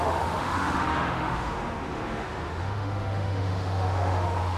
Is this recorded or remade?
remade